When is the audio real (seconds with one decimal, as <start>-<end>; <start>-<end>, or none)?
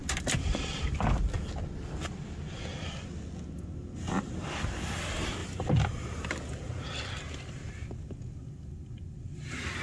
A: 0.0-5.4; 6.7-9.8